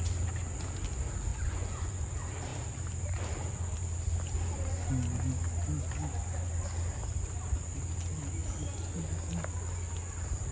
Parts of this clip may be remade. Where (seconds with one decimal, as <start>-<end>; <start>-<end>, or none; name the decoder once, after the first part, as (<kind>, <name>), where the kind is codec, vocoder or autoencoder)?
1.3-2.1 (vocoder, Vocos)